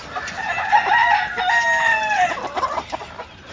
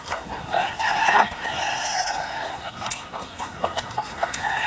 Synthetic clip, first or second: second